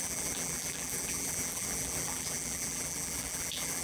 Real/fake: fake